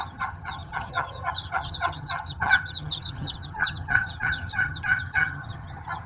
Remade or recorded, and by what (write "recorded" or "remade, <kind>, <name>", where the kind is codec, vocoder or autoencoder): remade, vocoder, HiFi-GAN